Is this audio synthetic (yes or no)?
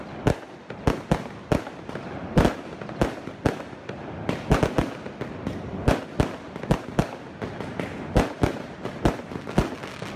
no